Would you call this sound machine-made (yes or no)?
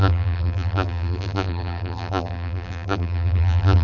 yes